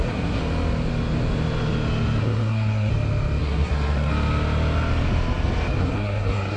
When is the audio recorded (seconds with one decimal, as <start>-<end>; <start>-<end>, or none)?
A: 0.4-2.2; 2.9-3.4; 4.1-5.8